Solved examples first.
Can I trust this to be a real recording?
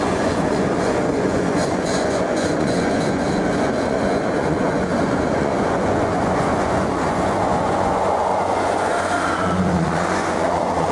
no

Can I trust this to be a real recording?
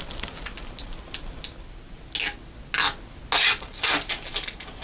yes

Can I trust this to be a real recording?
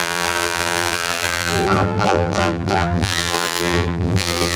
no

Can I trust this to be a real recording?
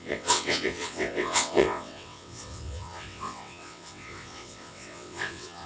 no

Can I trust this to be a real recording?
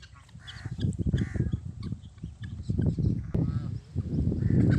yes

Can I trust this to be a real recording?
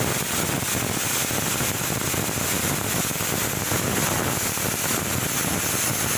yes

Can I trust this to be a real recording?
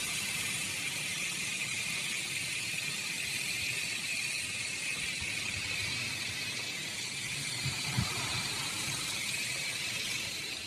yes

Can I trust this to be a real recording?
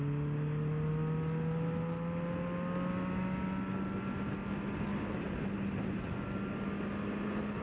yes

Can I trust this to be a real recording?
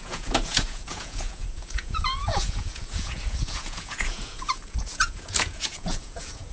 no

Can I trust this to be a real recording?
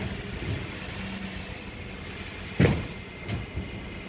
yes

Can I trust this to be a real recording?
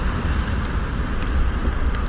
no